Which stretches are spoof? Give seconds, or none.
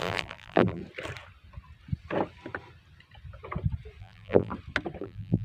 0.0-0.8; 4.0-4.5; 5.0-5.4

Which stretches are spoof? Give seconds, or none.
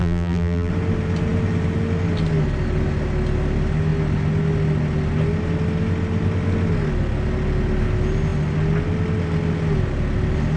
0.0-0.7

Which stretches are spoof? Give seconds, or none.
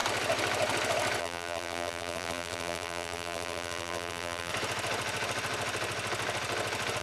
1.2-4.5